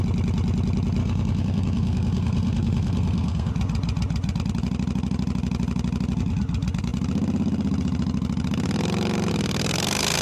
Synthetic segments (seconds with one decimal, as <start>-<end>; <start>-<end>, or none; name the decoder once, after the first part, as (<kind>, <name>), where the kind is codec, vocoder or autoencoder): 1.0-3.5 (codec, SNAC)